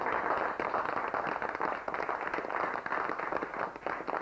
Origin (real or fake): real